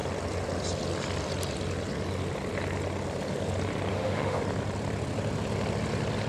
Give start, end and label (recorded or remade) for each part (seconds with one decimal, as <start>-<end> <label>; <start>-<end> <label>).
0.0-3.9 recorded; 3.9-4.4 remade; 4.4-6.3 recorded